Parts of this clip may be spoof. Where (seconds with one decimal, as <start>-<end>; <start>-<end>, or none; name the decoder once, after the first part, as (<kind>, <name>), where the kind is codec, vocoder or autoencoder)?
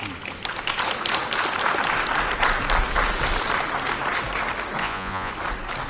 4.8-5.3 (vocoder, Vocos)